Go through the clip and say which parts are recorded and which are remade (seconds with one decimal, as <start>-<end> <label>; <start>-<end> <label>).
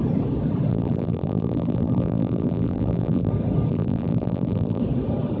0.0-0.7 recorded; 0.7-3.3 remade; 3.3-3.7 recorded; 3.7-4.8 remade; 4.8-5.4 recorded